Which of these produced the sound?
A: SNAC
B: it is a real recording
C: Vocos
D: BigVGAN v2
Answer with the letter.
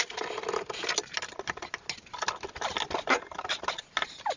B